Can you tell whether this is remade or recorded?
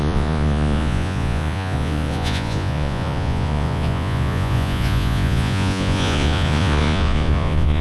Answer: remade